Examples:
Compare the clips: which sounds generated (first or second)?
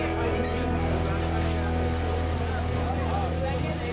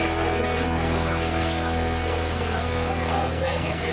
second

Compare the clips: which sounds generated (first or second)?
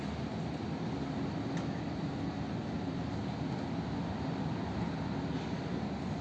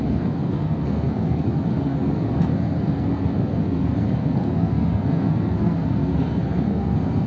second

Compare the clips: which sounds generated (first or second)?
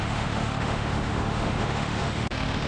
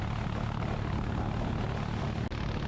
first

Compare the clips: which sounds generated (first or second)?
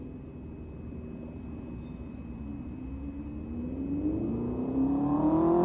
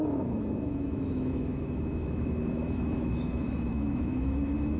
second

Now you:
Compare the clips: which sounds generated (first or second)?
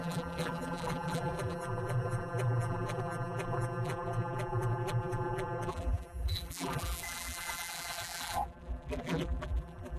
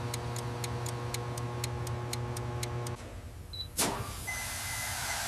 first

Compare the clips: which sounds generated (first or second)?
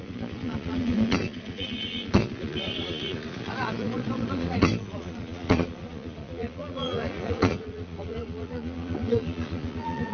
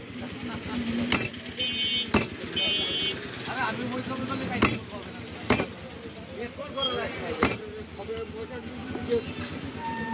first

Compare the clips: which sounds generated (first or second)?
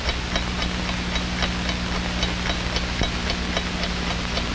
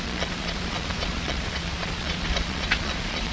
second